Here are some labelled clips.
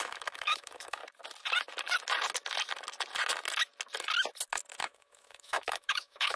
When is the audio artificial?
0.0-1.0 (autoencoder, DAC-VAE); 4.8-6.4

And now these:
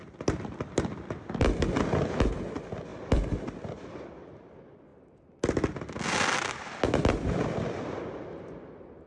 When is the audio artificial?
none

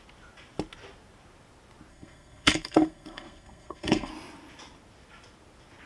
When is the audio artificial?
1.9-4.1 (codec, SNAC)

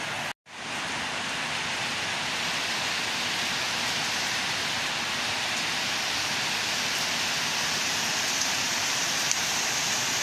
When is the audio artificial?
7.8-9.7 (vocoder, BigVGAN v2)

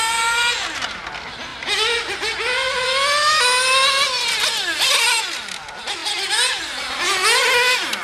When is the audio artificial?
none

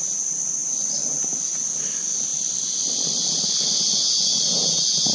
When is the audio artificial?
none

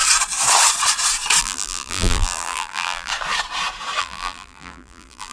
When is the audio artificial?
1.4-3.1 (vocoder, BigVGAN v2); 4.0-5.3

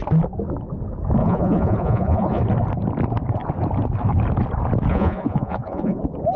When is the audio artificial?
1.2-2.4 (vocoder, Vocos); 4.9-6.0